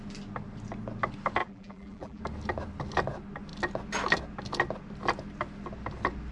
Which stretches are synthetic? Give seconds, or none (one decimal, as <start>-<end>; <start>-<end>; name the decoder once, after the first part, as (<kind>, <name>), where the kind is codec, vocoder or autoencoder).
1.4-2.2 (vocoder, BigVGAN v2)